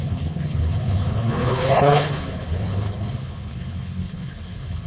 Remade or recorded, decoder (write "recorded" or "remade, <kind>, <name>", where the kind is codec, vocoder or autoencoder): remade, codec, HILCodec